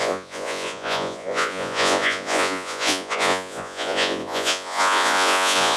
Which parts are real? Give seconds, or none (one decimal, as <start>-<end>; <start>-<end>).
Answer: none